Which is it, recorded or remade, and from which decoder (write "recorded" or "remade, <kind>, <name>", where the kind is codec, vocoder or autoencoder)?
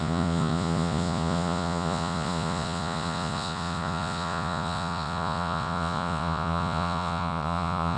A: remade, vocoder, Vocos